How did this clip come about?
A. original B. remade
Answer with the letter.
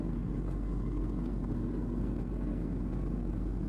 B